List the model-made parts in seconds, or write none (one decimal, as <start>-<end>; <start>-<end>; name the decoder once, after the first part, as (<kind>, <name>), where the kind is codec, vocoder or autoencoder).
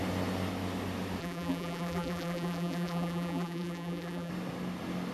1.2-4.3 (vocoder, BigVGAN v2)